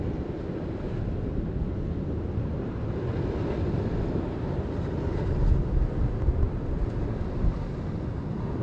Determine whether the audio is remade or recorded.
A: recorded